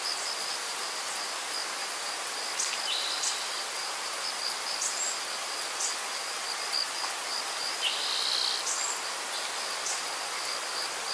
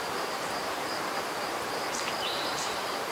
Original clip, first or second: first